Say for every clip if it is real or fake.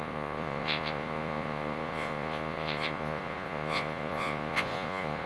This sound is fake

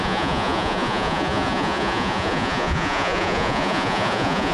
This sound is fake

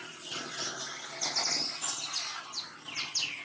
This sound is real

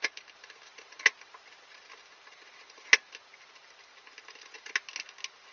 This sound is real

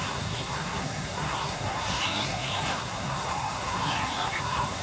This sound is fake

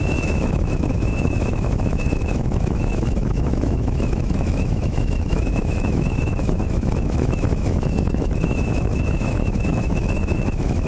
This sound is fake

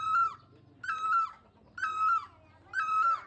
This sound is real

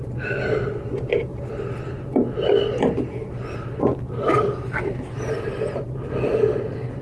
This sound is real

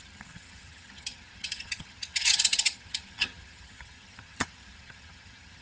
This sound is fake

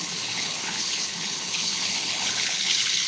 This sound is fake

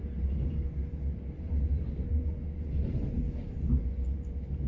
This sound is real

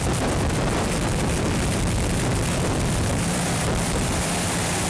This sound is fake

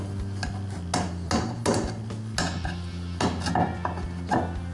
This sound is real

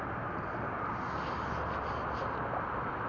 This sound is real